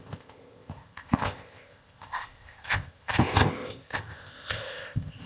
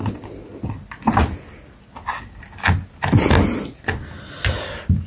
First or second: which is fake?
first